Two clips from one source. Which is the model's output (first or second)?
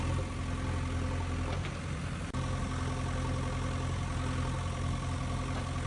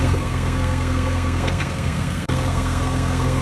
second